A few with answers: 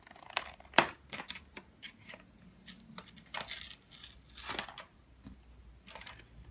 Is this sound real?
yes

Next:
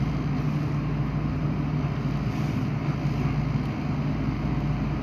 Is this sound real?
yes